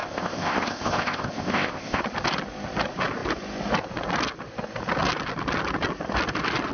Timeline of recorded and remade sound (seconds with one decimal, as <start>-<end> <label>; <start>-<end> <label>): 0.0-2.0 remade; 2.0-6.7 recorded